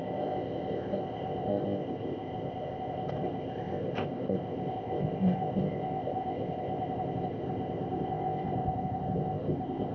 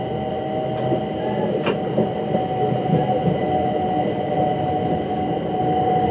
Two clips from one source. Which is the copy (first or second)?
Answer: first